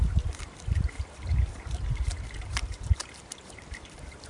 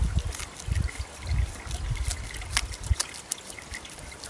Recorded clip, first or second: second